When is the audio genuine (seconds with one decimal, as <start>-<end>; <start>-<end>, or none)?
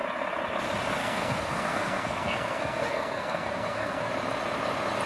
0.0-1.0; 4.1-5.1